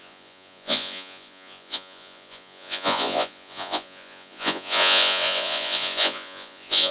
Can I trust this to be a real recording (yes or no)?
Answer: no